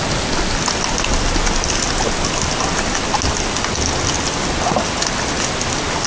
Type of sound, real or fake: real